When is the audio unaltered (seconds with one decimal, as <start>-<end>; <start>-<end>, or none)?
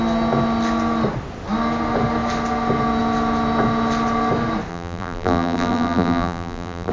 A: 0.0-4.7